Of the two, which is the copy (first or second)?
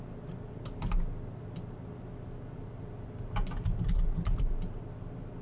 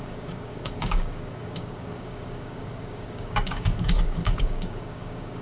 second